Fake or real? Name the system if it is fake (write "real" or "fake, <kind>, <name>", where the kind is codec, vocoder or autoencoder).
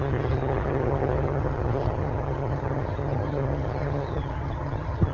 fake, vocoder, HiFi-GAN